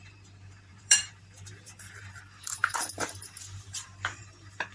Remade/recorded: remade